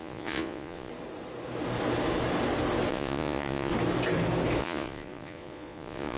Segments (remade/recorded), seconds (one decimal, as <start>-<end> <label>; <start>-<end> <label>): 0.0-0.9 remade; 0.9-2.9 recorded; 2.9-3.7 remade; 3.7-4.6 recorded; 4.6-6.2 remade

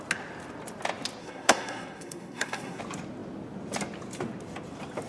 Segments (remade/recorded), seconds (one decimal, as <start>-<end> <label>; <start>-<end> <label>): 0.0-1.2 recorded; 1.2-2.8 remade; 2.8-5.1 recorded

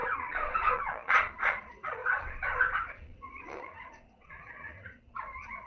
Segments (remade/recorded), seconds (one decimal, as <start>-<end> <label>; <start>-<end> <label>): 0.0-5.7 remade

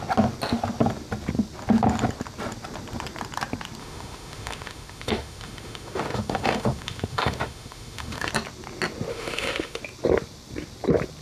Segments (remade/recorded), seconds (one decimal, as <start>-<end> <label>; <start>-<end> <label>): 0.0-3.8 recorded; 3.8-8.3 remade; 8.3-9.1 recorded; 9.1-9.8 remade; 9.8-11.2 recorded

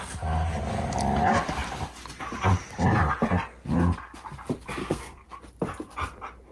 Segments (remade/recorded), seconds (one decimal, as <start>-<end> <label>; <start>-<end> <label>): 0.0-4.8 recorded; 4.8-5.4 remade; 5.4-6.5 recorded

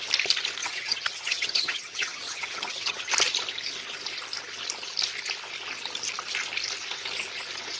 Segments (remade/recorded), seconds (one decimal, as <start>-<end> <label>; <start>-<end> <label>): 0.0-0.6 recorded; 0.6-3.1 remade; 3.1-7.8 recorded

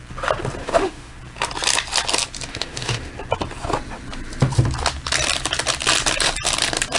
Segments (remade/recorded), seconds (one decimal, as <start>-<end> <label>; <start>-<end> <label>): 0.0-0.6 recorded; 0.6-1.2 remade; 1.2-2.5 recorded; 2.5-3.1 remade; 3.1-7.0 recorded

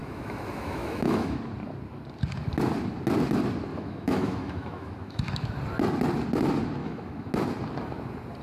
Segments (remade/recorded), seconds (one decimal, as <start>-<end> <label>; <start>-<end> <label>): 0.0-1.4 remade; 1.4-3.7 recorded; 3.7-5.5 remade; 5.5-6.8 recorded; 6.8-7.3 remade; 7.3-8.4 recorded